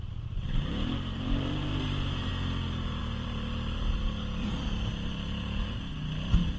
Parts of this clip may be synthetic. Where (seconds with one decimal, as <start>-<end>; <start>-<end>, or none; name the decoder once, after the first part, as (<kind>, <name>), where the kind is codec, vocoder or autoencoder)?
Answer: 0.0-2.3 (vocoder, BigVGAN v2); 3.0-4.2; 4.9-6.6